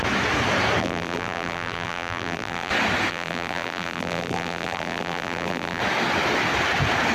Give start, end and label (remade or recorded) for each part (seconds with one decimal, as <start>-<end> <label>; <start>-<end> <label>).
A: 0.0-0.8 recorded; 0.8-2.7 remade; 2.7-3.1 recorded; 3.1-5.8 remade; 5.8-7.1 recorded